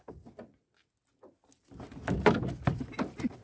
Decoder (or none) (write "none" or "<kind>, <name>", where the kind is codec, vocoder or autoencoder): none